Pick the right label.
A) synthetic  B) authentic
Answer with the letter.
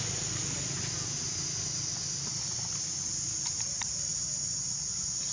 B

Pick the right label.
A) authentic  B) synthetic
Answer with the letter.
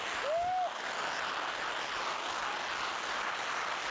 A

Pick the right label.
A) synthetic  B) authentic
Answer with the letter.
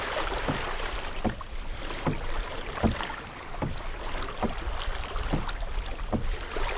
B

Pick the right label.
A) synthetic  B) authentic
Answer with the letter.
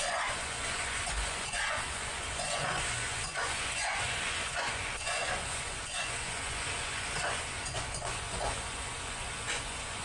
A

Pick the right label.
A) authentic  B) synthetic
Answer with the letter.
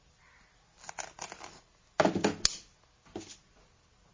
A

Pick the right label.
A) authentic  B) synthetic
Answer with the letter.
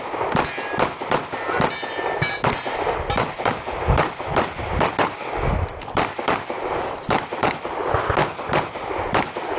A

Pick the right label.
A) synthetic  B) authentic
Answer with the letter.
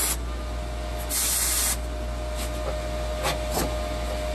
B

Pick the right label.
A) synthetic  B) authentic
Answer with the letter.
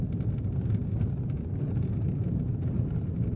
B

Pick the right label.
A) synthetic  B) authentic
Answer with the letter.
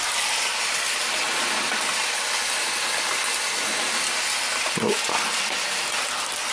B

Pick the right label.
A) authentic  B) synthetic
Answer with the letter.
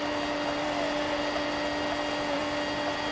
A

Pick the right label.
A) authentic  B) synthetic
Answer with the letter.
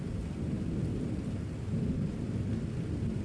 A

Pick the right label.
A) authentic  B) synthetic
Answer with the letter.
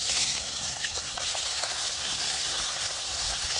B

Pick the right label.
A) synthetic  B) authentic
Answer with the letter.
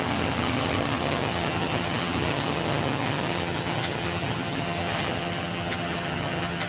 A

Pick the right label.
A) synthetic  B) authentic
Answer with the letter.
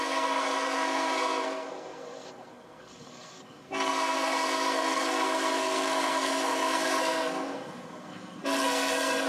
A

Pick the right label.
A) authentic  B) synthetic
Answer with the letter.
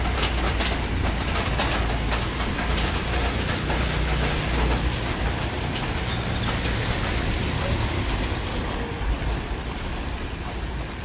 A